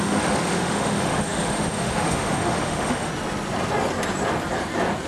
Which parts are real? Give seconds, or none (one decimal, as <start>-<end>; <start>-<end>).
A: 3.1-5.1